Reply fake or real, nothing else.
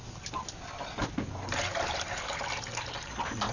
real